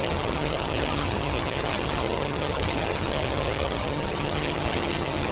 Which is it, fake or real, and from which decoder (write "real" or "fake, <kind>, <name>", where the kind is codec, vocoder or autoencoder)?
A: fake, vocoder, HiFi-GAN